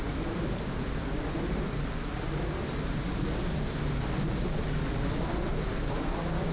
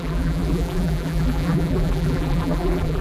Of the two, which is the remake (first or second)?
second